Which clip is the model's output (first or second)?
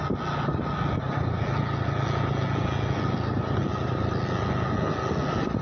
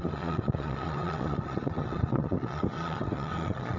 second